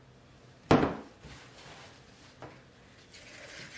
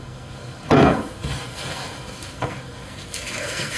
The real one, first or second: first